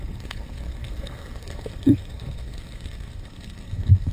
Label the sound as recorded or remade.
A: remade